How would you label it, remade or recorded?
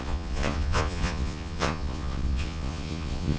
remade